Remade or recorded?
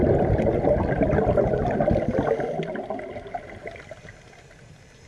recorded